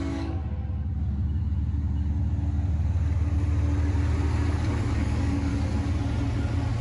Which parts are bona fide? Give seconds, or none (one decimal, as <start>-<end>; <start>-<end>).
0.4-4.5; 5.5-6.8